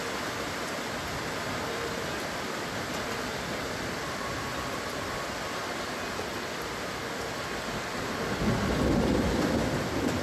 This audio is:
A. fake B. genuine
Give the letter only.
B